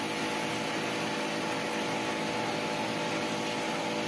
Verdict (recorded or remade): recorded